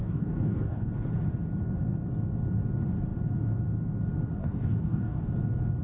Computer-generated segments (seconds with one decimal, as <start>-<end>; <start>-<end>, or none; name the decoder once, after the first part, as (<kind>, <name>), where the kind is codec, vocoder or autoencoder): 0.0-0.9 (codec, DAC); 4.4-5.3

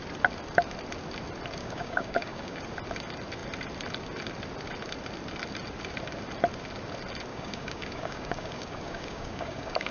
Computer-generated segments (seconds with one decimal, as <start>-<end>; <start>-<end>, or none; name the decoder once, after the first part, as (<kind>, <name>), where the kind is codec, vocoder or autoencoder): 1.6-2.6 (codec, DAC); 7.3-9.9

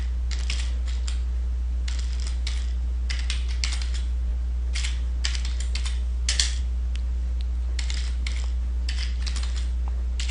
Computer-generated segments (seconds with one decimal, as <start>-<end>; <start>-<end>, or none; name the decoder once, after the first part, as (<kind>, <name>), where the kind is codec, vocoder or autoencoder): none

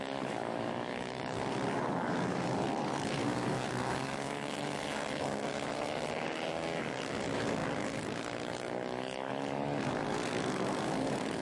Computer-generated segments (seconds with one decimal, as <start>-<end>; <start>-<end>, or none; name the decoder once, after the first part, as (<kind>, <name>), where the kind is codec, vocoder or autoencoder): 0.0-11.4 (codec, DAC)

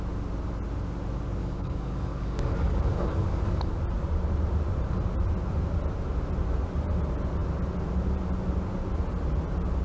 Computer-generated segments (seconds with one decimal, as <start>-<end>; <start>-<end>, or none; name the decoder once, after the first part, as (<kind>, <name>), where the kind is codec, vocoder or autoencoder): 1.4-3.7 (codec, DAC)

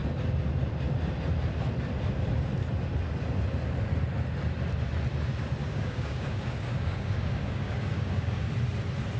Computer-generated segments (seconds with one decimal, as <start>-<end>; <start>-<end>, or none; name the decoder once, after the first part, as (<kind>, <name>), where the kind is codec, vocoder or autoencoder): 5.6-8.5 (codec, DAC)

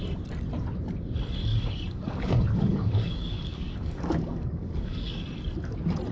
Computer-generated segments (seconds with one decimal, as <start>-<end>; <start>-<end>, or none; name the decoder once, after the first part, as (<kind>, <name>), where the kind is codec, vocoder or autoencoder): 1.5-5.2 (codec, DAC)